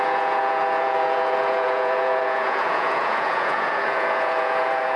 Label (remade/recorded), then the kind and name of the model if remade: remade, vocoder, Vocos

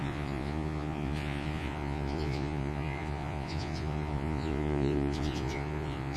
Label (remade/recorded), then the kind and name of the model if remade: remade, vocoder, Vocos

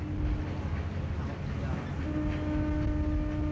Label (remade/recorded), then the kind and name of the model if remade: recorded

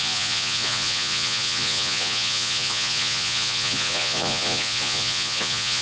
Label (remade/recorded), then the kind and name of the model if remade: remade, vocoder, Vocos